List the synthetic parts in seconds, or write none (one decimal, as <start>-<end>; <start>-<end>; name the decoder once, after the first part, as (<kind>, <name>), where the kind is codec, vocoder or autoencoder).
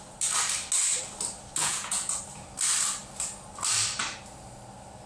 1.6-2.2 (vocoder, Vocos)